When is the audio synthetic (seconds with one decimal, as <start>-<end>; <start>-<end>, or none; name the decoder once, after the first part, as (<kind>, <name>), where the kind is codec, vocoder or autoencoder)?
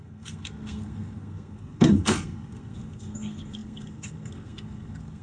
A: 0.0-5.2 (codec, SNAC)